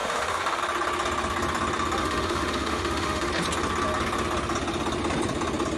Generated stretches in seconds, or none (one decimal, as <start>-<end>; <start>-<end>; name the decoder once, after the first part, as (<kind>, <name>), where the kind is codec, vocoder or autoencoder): 0.0-0.6 (autoencoder, DAC-VAE); 2.0-3.3